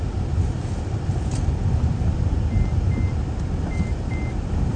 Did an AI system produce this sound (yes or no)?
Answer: no